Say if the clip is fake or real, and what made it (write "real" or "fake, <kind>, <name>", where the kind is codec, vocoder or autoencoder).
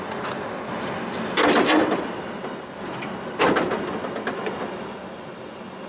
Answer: real